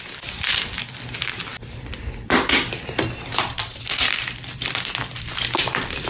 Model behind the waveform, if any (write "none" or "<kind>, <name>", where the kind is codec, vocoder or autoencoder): vocoder, BigVGAN v2